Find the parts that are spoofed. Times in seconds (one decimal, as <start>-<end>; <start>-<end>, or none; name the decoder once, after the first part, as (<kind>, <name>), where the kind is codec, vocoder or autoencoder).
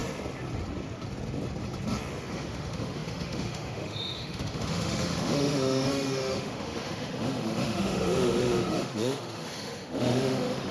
2.3-10.7 (autoencoder, DAC-VAE)